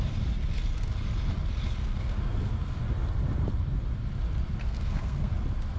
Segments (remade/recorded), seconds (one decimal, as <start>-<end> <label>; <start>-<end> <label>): 0.0-1.8 recorded; 1.8-2.8 remade; 2.8-4.6 recorded; 4.6-5.3 remade; 5.3-5.8 recorded